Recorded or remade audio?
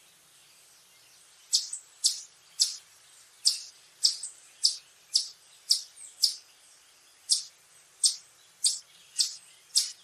recorded